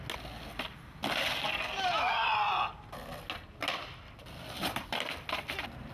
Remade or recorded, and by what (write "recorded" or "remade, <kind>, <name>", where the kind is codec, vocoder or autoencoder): recorded